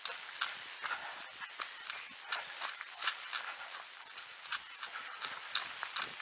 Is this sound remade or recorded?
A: recorded